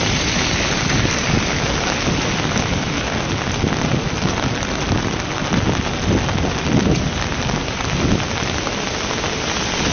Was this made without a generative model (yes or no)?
yes